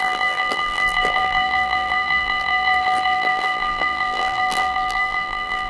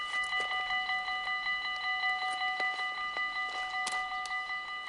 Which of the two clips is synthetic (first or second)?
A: first